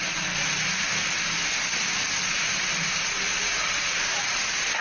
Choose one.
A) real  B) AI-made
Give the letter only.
A